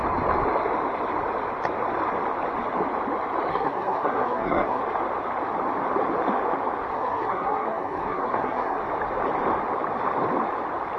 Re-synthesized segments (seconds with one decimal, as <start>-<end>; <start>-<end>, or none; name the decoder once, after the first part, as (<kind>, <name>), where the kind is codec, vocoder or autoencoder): 3.5-4.8 (codec, SNAC); 6.9-8.8

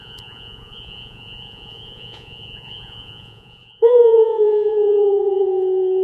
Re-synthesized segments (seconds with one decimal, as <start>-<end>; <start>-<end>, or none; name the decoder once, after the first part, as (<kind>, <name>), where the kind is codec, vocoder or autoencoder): 0.0-6.0 (vocoder, Vocos)

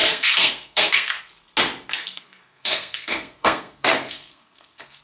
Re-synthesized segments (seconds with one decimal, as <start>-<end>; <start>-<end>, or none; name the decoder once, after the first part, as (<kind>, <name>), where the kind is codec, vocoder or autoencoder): 0.0-1.3 (codec, SNAC); 1.9-5.0

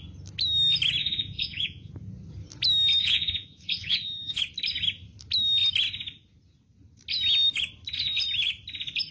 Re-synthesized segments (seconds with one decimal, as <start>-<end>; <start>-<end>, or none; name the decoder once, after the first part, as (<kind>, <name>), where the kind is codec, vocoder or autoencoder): 1.0-1.9 (vocoder, Vocos); 3.0-4.4

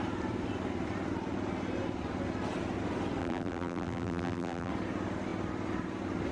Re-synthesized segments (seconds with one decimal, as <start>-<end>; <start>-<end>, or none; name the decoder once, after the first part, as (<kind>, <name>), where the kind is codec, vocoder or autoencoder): 3.2-4.7 (vocoder, BigVGAN v2)